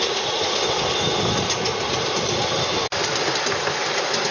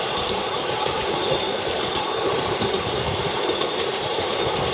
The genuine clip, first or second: first